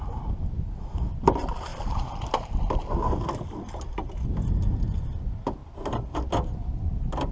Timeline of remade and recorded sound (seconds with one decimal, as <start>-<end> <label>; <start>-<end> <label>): 0.0-1.7 recorded; 1.7-2.2 remade; 2.2-7.3 recorded